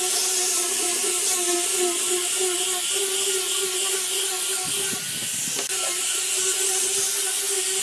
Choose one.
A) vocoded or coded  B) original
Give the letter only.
B